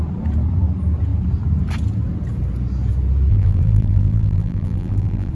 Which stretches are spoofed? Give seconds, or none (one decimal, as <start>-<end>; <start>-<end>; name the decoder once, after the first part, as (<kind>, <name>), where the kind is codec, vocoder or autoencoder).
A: 3.3-5.3 (vocoder, BigVGAN v2)